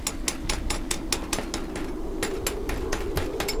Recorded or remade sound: recorded